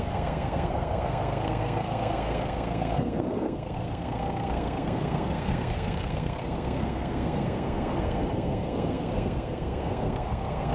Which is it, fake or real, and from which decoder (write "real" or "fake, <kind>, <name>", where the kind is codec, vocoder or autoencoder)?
fake, codec, SNAC